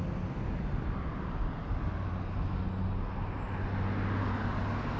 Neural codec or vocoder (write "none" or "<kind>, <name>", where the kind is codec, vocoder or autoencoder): none